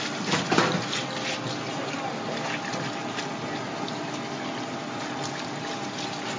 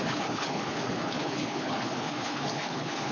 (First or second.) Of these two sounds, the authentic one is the first